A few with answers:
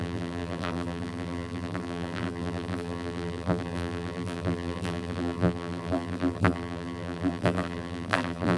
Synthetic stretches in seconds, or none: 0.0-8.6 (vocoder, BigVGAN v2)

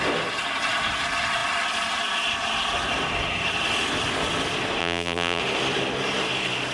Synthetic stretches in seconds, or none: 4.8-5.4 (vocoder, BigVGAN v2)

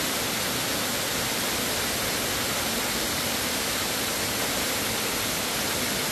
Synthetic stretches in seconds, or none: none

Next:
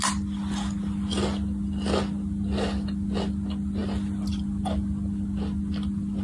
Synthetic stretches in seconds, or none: none

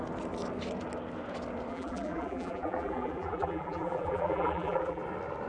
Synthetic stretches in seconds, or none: 1.7-5.0 (vocoder, BigVGAN v2)

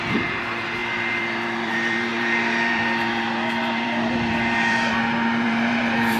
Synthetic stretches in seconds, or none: 0.0-6.2 (vocoder, BigVGAN v2)

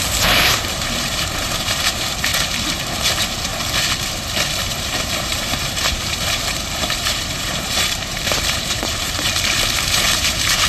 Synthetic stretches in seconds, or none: 0.0-2.3 (vocoder, BigVGAN v2); 2.9-3.5; 4.7-10.7